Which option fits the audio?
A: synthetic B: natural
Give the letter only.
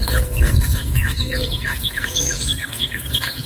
A